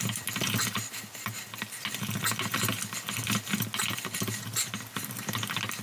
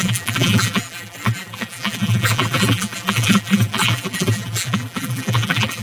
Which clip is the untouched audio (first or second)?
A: first